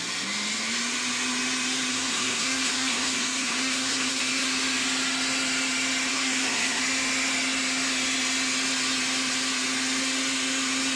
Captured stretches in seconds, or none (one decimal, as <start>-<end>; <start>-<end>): 0.0-1.9; 4.5-6.1; 6.8-11.0